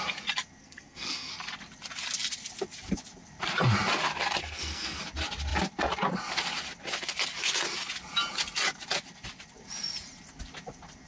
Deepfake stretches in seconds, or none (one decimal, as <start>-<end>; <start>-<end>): 0.6-1.3; 4.4-5.0